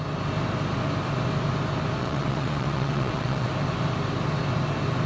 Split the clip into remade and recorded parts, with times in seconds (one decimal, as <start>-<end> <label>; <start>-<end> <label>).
0.0-2.0 recorded; 2.0-3.5 remade; 3.5-5.1 recorded